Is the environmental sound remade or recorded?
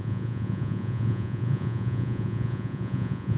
remade